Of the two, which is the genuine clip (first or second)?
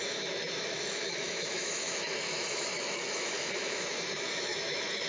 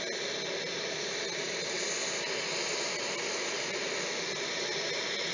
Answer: second